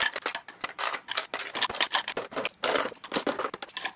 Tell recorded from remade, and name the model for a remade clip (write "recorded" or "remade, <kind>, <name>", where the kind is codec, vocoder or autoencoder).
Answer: recorded